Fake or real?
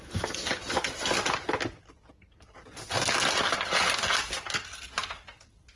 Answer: real